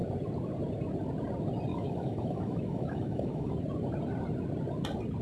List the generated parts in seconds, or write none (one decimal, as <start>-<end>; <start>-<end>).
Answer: 1.7-3.5